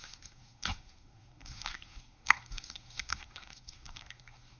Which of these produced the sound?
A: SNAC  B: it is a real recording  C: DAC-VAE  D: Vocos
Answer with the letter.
A